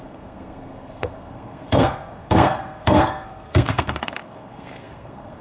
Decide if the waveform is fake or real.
fake